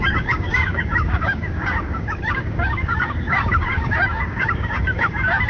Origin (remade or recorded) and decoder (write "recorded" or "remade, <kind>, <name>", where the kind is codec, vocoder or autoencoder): remade, codec, DAC